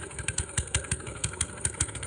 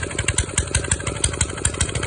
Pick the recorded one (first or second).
second